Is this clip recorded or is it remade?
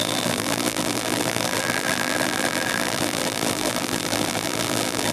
remade